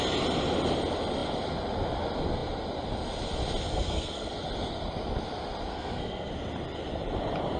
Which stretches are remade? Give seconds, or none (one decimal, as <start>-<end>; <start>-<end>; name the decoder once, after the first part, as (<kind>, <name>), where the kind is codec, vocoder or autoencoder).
3.7-4.3 (codec, SNAC); 5.7-6.3